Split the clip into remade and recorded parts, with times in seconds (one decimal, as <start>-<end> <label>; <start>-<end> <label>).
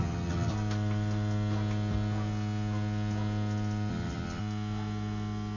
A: 0.0-0.5 remade; 0.5-3.9 recorded; 3.9-4.4 remade; 4.4-5.6 recorded